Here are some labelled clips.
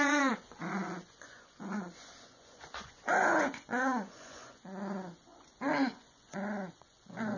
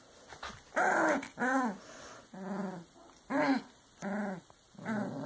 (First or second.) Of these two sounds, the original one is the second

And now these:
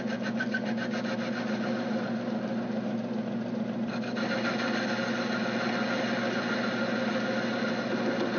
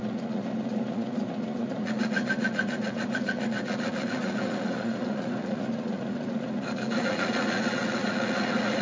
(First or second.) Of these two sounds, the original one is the first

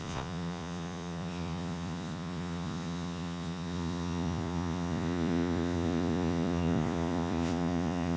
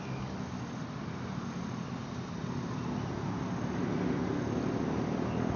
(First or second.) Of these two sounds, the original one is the second